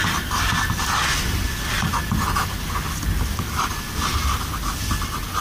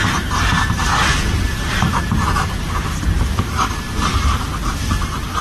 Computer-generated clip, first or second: second